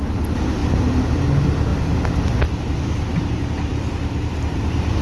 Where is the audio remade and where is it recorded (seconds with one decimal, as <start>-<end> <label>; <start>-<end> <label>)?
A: 0.0-5.0 recorded

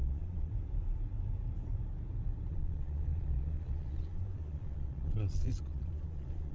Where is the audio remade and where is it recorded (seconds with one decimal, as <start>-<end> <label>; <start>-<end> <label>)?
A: 0.0-0.5 remade; 0.5-2.5 recorded; 2.5-6.5 remade

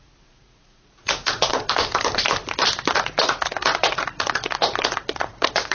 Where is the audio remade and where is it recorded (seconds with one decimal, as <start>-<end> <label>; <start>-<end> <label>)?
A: 0.0-1.5 remade; 1.5-2.9 recorded; 2.9-5.7 remade

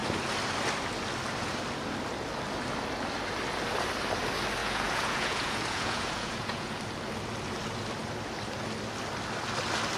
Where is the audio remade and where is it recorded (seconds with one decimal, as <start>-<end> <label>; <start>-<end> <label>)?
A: 0.0-4.6 recorded; 4.6-6.8 remade; 6.8-10.0 recorded

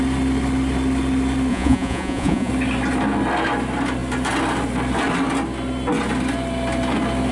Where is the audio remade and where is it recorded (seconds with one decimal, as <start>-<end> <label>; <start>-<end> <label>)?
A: 0.0-1.5 recorded; 1.5-2.5 remade; 2.5-7.3 recorded

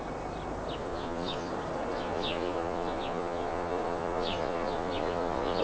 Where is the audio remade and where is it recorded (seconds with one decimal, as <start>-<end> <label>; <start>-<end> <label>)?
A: 0.0-0.8 recorded; 0.8-1.5 remade; 1.5-1.9 recorded; 1.9-5.6 remade